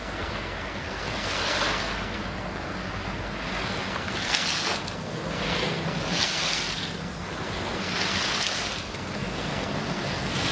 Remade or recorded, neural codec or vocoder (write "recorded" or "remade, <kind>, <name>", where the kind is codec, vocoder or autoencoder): remade, codec, SNAC